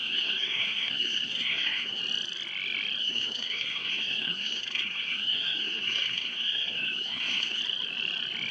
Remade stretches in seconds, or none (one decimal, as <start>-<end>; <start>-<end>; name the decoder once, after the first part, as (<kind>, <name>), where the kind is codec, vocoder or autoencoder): 0.0-2.0 (codec, SNAC); 3.0-7.6